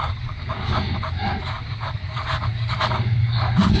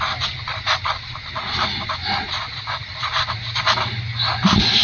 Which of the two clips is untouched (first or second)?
second